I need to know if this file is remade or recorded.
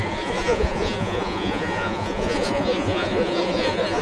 remade